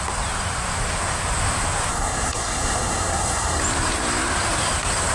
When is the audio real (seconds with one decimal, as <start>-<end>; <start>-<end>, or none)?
0.0-1.9; 3.6-5.1